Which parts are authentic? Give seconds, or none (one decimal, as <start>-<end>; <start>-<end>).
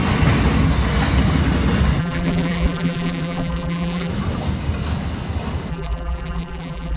0.0-2.0; 4.1-5.7